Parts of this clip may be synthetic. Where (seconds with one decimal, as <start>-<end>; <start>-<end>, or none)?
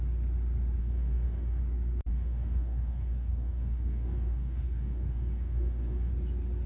0.8-1.6; 2.1-6.1